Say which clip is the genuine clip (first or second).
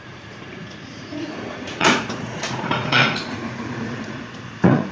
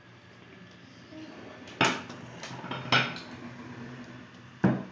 second